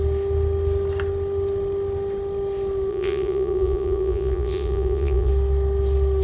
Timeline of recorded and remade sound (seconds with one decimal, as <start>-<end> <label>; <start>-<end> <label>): 0.0-2.9 recorded; 2.9-5.3 remade; 5.3-6.2 recorded